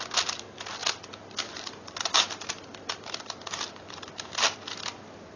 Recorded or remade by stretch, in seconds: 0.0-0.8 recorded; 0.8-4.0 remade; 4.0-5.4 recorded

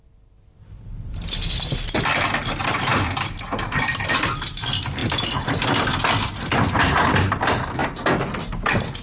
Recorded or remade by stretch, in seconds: 0.0-9.0 recorded

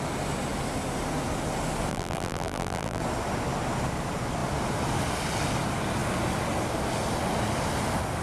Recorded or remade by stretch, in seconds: 0.0-1.9 recorded; 1.9-3.0 remade; 3.0-8.2 recorded

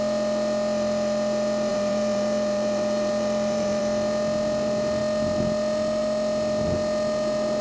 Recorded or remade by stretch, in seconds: 0.0-1.7 recorded; 1.7-3.8 remade; 3.8-7.6 recorded